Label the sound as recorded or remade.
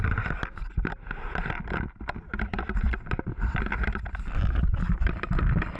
remade